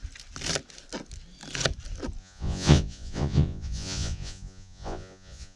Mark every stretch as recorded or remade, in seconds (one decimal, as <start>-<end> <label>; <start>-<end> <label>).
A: 0.0-2.2 recorded; 2.2-5.6 remade